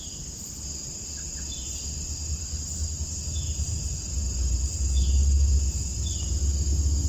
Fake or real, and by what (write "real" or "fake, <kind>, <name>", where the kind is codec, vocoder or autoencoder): real